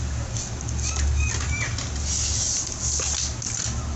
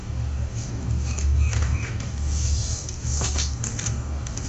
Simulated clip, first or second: second